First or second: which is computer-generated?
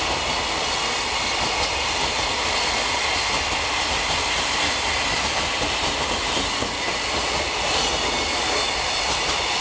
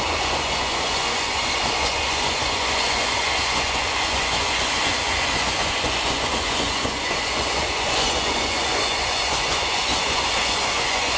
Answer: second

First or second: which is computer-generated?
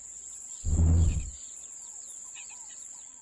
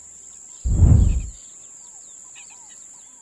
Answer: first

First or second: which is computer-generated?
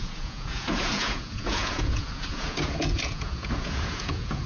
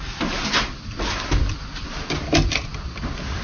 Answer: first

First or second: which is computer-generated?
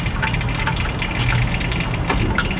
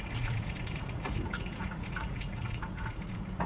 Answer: second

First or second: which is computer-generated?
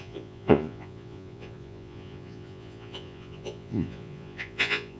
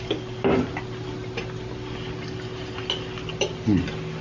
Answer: first